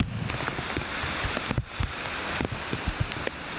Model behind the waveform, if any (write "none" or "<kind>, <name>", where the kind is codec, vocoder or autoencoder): none